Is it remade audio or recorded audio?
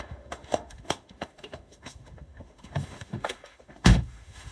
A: remade